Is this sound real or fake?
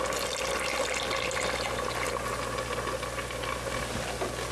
real